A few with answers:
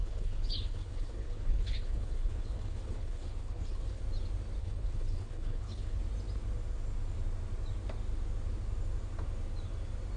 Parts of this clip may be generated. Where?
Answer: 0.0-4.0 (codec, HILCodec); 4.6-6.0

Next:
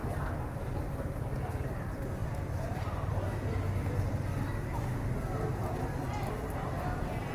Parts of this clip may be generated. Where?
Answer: 0.0-0.6 (vocoder, BigVGAN v2); 2.2-3.1